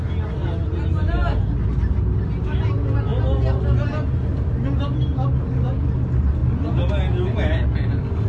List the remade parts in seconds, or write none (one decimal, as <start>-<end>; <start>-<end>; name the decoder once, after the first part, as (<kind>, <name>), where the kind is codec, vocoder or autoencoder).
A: none